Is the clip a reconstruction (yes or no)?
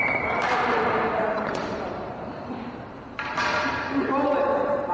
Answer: yes